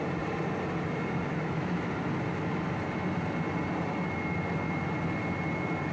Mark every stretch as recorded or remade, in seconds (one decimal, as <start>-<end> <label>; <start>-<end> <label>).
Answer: 0.0-1.3 recorded; 1.3-1.9 remade; 1.9-5.9 recorded